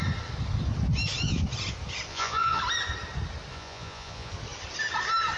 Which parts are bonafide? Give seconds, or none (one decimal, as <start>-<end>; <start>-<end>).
0.0-2.1; 2.6-3.5; 4.3-5.4